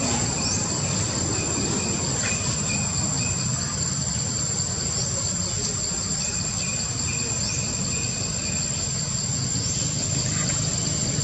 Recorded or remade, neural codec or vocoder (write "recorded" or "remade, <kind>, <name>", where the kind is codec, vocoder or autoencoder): recorded